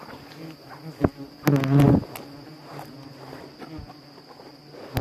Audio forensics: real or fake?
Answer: real